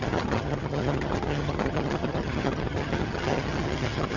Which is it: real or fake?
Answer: fake